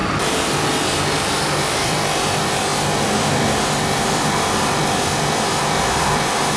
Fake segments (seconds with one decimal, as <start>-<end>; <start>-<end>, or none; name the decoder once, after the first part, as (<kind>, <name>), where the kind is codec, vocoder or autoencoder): 1.8-6.6 (vocoder, BigVGAN v2)